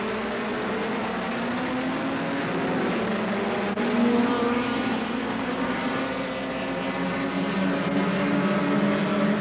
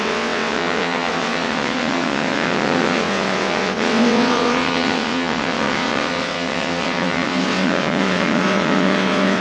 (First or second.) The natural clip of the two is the first